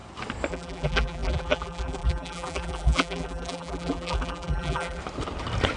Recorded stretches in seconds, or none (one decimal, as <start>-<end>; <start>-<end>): 0.0-0.5; 5.0-5.8